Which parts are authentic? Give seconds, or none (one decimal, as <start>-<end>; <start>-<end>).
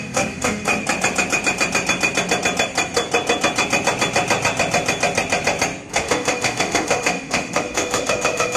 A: 0.7-5.9